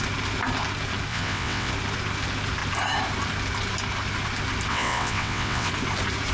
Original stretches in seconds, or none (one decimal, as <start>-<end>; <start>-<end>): 0.0-1.1; 1.7-4.7; 5.7-6.3